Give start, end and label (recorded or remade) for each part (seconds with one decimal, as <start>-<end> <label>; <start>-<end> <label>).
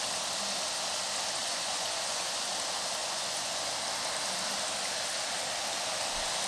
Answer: 0.0-1.4 recorded; 1.4-2.5 remade; 2.5-3.0 recorded; 3.0-3.7 remade; 3.7-6.5 recorded